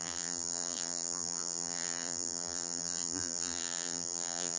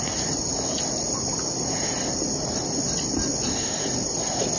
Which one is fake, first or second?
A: first